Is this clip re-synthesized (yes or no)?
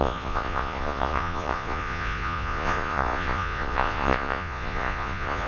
yes